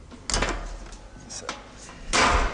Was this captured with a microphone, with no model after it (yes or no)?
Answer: yes